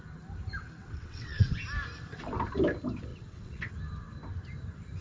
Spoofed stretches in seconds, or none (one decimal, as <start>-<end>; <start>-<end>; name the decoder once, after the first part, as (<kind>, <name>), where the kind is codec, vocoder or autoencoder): 0.8-1.6 (vocoder, WaveNeXt); 3.1-3.7